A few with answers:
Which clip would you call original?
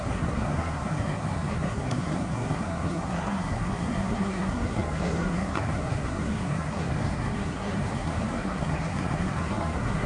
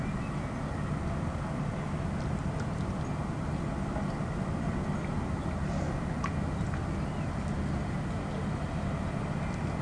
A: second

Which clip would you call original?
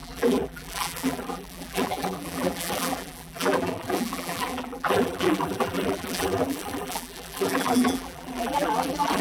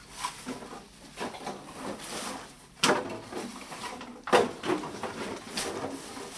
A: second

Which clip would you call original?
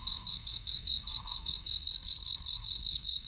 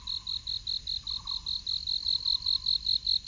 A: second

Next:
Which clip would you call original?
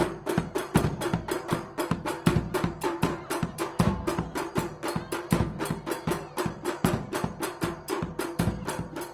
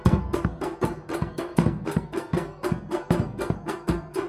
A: first